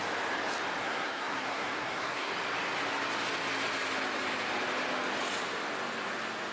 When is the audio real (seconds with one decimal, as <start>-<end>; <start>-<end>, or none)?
0.0-0.8; 2.3-6.5